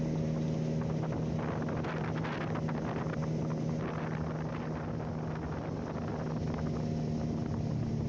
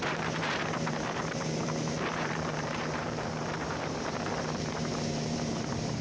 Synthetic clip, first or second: second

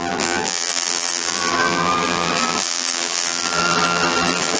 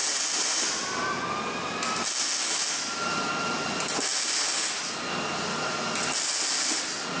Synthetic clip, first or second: first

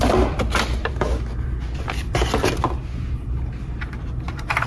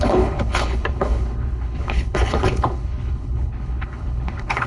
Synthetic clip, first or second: second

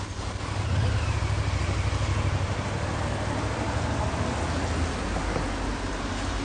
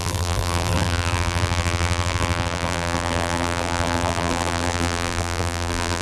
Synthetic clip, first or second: second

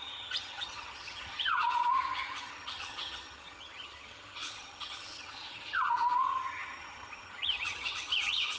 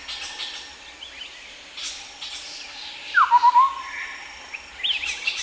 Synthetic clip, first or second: first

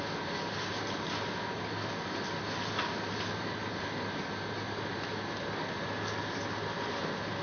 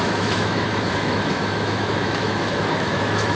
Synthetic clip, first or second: second